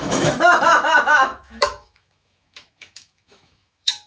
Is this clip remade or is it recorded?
remade